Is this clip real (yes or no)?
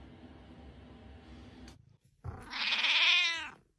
yes